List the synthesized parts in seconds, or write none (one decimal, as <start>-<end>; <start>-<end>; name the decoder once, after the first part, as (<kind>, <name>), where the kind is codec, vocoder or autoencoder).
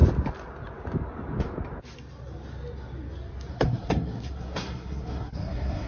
3.5-5.9 (codec, SNAC)